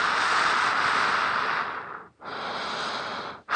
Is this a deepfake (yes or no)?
no